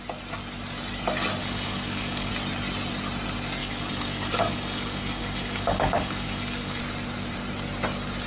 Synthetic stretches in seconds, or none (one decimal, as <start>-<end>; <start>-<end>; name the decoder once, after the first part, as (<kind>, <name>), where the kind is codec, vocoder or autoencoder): 1.4-2.3 (codec, DAC); 3.6-6.8